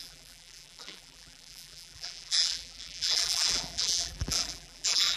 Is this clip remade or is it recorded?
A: remade